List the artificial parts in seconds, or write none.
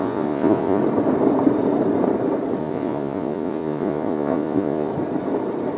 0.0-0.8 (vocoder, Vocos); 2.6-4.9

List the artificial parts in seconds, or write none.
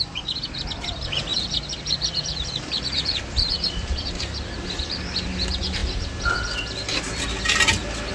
1.3-5.3 (vocoder, BigVGAN v2)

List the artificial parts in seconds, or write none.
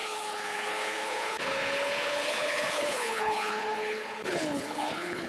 0.0-5.3 (codec, HILCodec)